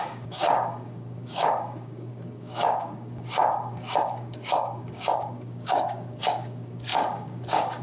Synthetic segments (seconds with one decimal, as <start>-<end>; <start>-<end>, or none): 0.0-7.8